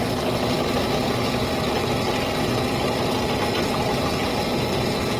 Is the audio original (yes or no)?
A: yes